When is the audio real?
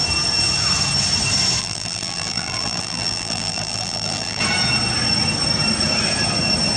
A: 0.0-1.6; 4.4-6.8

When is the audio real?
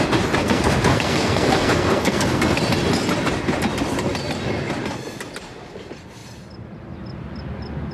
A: 0.0-0.4; 2.6-7.9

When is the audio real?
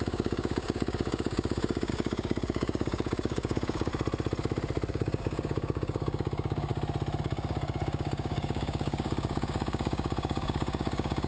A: 3.9-4.9; 6.7-7.2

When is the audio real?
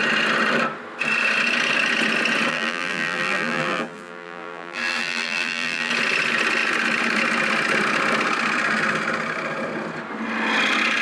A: 0.0-2.5; 5.9-11.0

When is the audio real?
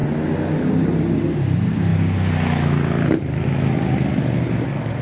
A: 0.0-0.7; 1.9-5.0